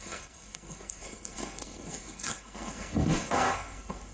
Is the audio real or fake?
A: fake